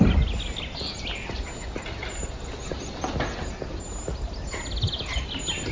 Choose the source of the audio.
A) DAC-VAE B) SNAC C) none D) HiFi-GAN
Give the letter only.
C